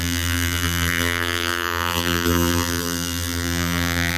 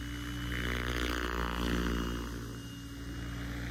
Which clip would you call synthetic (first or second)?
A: first